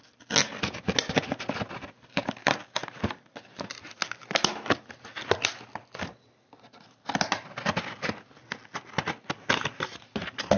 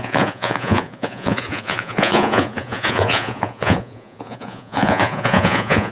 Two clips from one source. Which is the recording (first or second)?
first